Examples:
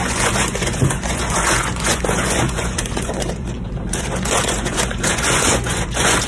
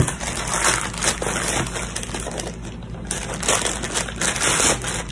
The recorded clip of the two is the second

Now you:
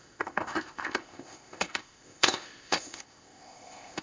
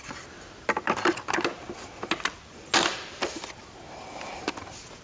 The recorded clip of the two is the second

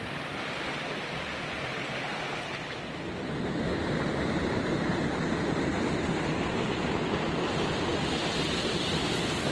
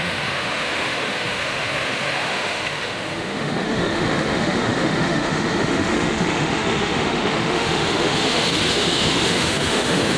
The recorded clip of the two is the first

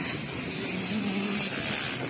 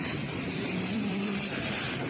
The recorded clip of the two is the first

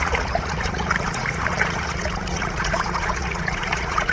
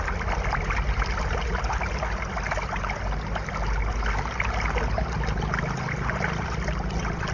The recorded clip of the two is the second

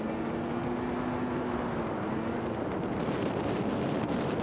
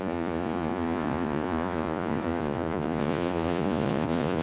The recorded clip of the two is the first